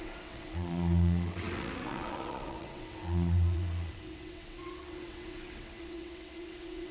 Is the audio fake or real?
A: fake